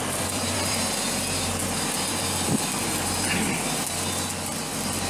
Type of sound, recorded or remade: remade